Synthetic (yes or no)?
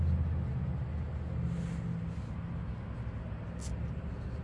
no